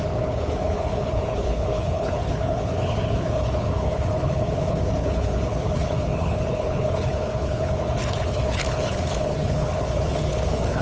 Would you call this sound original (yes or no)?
no